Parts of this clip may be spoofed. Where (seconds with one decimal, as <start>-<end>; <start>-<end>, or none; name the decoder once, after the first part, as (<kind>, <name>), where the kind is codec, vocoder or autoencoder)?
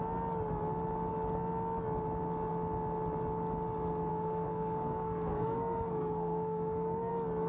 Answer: 4.1-7.1 (codec, SNAC)